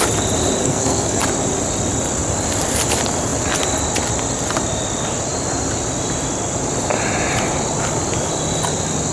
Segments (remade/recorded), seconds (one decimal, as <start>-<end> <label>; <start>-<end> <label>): 0.0-0.6 recorded; 0.6-1.2 remade; 1.2-9.1 recorded